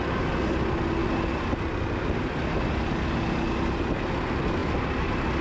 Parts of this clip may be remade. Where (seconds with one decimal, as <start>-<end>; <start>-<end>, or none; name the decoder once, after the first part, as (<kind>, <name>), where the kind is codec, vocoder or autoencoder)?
none